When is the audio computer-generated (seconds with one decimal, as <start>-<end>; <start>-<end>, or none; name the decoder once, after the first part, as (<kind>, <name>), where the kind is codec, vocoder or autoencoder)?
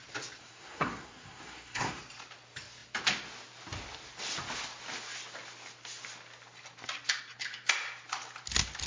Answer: 0.4-2.0 (codec, SNAC)